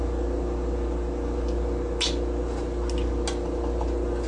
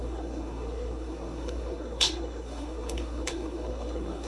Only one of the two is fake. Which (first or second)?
second